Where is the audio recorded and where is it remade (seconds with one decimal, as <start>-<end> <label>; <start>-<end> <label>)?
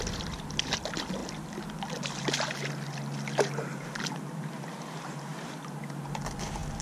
0.0-6.8 recorded